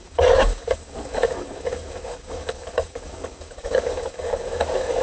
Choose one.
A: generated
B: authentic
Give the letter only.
A